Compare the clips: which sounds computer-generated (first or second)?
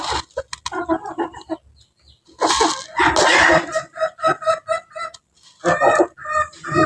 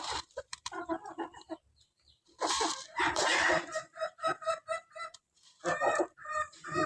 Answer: second